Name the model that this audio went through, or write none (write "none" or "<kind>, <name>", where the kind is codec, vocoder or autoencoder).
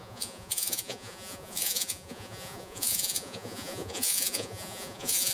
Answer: vocoder, Vocos